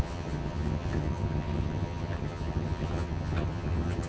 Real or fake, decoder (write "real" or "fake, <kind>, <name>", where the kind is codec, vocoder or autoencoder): fake, vocoder, HiFi-GAN